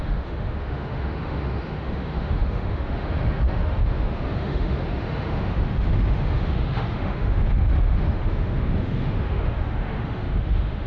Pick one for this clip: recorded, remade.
remade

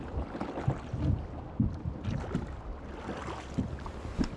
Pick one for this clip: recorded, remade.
recorded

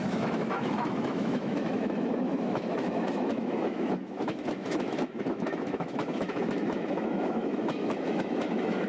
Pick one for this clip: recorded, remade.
remade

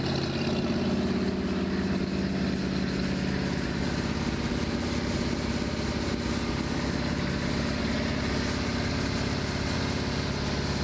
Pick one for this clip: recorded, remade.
recorded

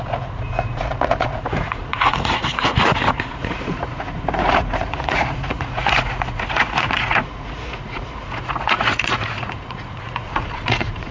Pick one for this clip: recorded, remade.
remade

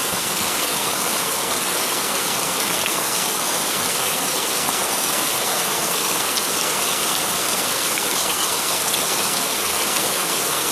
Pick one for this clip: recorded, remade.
remade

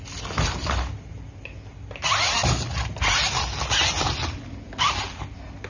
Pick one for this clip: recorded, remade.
recorded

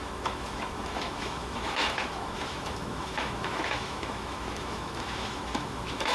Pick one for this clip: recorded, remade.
remade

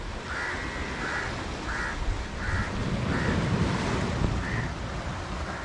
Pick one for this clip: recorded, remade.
recorded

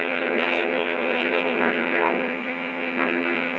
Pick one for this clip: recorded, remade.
remade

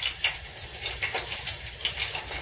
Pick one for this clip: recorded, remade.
recorded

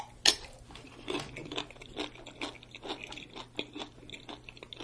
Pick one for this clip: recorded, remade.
recorded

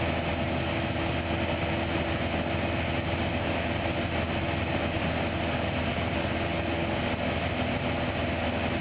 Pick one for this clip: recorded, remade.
recorded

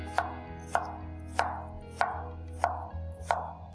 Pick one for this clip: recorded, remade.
recorded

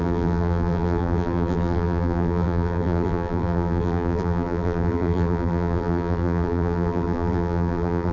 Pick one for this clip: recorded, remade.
remade